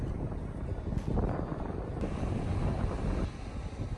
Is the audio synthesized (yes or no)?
no